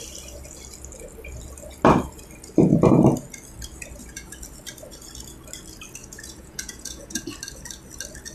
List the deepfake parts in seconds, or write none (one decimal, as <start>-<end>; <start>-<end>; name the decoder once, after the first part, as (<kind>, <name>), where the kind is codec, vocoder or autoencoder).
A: 6.0-7.2 (vocoder, Vocos)